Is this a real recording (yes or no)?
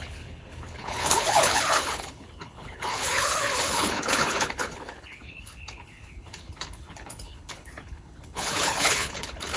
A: no